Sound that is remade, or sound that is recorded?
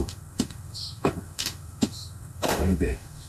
remade